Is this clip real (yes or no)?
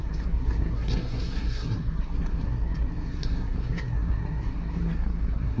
no